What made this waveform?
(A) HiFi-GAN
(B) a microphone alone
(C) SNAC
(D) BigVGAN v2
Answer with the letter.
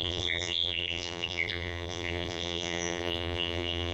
D